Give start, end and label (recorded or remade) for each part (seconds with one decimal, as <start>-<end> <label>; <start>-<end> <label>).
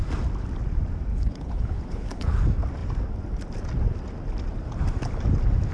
0.0-1.1 recorded; 1.1-2.4 remade; 2.4-5.7 recorded